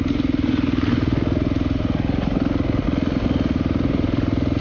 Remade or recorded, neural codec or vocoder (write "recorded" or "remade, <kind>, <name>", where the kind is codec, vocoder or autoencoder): recorded